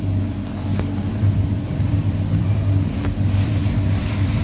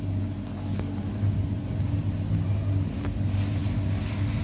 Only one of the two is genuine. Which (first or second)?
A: second